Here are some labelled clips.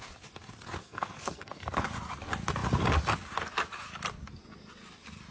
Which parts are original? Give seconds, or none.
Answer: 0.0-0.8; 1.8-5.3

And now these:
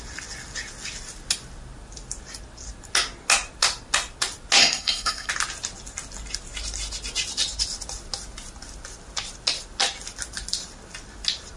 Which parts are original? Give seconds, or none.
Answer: 0.0-4.6; 5.3-11.6

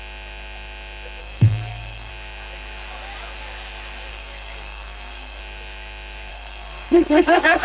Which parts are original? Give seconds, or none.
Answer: 0.0-1.2; 2.1-4.1; 5.4-6.3

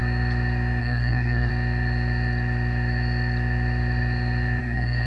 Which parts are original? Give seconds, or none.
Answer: 0.0-0.8; 1.5-4.6

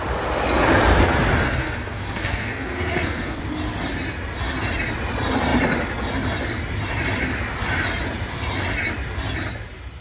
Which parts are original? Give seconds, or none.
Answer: 0.0-1.6; 3.4-10.0

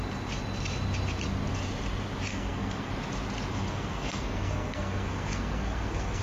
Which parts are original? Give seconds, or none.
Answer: 0.0-2.3; 2.9-3.5

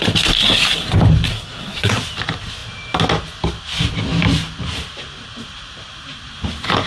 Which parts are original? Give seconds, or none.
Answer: 0.0-1.3; 1.9-6.9